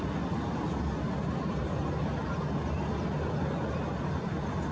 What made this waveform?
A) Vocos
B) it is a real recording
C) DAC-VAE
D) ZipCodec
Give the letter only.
B